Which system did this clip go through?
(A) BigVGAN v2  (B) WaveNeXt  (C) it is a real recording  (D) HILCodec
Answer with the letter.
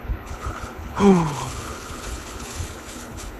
D